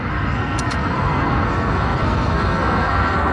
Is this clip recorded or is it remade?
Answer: remade